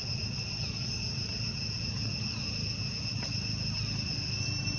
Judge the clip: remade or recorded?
recorded